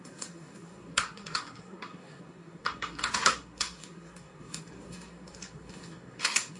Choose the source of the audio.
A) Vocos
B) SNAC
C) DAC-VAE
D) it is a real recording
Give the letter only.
B